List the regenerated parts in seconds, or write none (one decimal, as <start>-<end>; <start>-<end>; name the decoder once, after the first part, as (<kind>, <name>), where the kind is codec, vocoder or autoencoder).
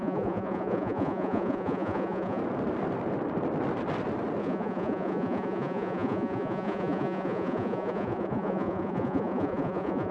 0.0-2.4 (vocoder, Vocos); 4.4-10.1